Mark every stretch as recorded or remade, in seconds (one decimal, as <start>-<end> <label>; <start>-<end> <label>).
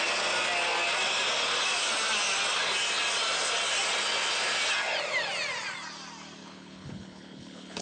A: 0.0-6.4 recorded; 6.4-7.8 remade